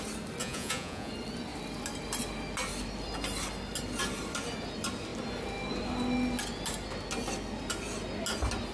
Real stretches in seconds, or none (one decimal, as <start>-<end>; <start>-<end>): 0.0-0.4; 1.1-8.7